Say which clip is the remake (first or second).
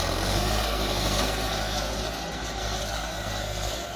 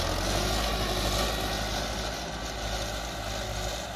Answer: first